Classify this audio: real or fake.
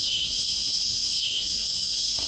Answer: fake